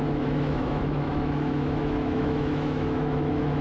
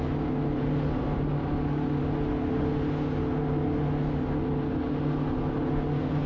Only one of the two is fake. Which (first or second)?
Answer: first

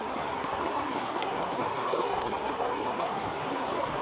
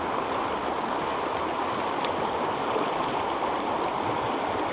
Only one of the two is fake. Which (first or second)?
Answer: first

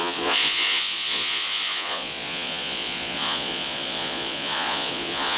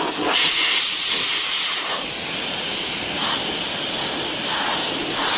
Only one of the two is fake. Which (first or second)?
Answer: first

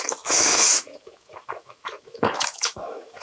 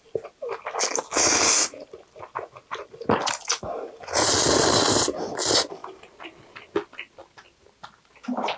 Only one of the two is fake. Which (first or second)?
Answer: first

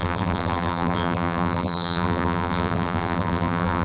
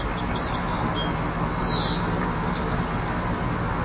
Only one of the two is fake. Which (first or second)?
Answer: first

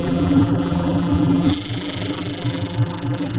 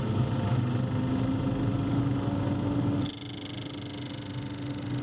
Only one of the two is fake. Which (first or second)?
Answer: first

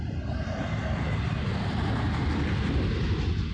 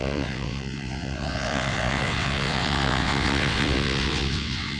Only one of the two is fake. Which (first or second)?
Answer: second